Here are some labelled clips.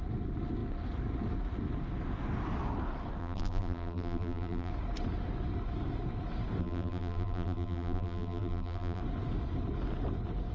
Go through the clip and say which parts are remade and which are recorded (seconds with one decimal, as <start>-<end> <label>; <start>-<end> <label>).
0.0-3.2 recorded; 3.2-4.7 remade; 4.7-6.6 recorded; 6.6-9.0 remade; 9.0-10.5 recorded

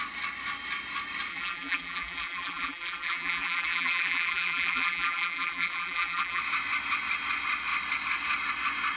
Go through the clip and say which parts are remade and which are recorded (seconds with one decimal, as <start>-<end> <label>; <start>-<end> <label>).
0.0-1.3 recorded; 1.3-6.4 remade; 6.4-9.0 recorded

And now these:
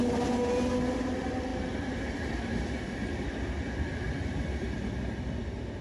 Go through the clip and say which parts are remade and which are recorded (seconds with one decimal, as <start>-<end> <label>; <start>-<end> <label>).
0.0-1.1 recorded; 1.1-5.8 remade

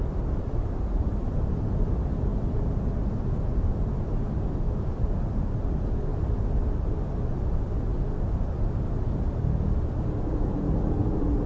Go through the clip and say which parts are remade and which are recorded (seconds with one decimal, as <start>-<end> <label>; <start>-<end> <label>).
0.0-2.3 remade; 2.3-4.9 recorded; 4.9-6.1 remade; 6.1-6.6 recorded; 6.6-7.9 remade; 7.9-10.5 recorded; 10.5-11.5 remade

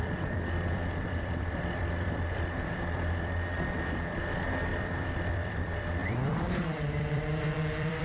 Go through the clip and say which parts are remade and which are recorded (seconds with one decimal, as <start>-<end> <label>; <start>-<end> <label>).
0.0-8.0 remade